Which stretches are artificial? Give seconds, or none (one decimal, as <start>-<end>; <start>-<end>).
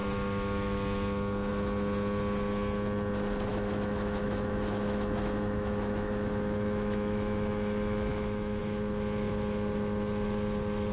3.5-8.6